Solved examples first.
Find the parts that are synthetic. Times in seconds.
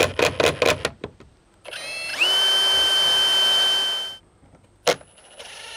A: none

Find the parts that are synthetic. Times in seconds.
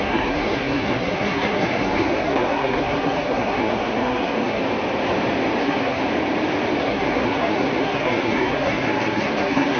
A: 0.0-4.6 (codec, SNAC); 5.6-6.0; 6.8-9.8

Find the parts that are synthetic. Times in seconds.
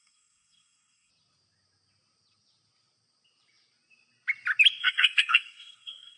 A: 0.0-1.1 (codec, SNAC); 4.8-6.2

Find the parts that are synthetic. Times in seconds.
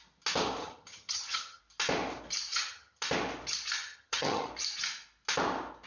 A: 0.6-1.6 (vocoder, HiFi-GAN); 2.5-3.0; 3.8-4.5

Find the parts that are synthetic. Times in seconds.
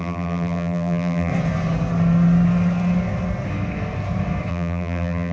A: 0.0-1.3 (vocoder, BigVGAN v2); 4.5-5.3